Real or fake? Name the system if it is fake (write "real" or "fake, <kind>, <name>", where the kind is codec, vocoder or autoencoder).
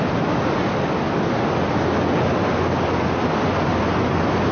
real